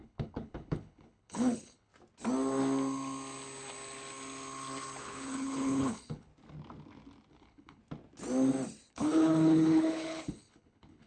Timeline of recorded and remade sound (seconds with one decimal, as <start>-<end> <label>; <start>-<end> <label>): 0.0-1.9 remade; 1.9-5.0 recorded; 5.0-6.3 remade; 6.3-7.3 recorded; 7.3-7.8 remade; 7.8-8.9 recorded; 8.9-11.1 remade